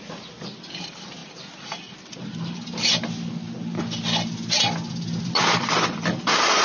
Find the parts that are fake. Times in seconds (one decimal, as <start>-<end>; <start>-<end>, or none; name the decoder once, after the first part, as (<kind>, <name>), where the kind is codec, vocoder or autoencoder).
0.0-1.2 (vocoder, BigVGAN v2); 5.2-6.6